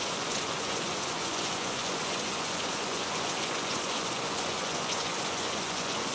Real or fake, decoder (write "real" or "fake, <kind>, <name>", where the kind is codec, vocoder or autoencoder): fake, vocoder, Vocos